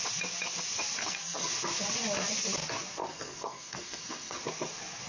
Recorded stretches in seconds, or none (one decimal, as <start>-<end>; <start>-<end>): 0.0-1.0; 1.5-3.0; 4.4-5.1